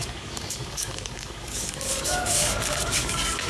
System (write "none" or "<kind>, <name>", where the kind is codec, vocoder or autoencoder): codec, DAC